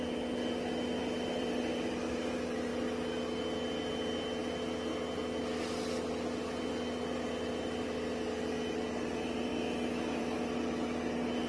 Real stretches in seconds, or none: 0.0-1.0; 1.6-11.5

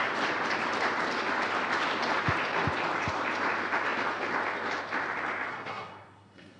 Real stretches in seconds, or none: 0.0-5.5

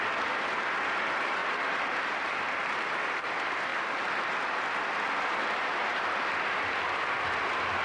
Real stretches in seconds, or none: 0.0-7.8

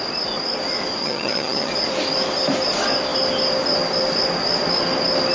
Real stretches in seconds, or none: 0.0-1.0; 1.7-5.3

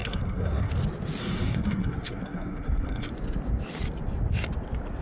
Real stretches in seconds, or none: 0.7-1.2; 3.1-5.0